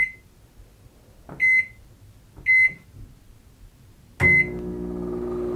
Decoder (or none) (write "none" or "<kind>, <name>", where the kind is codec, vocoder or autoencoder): none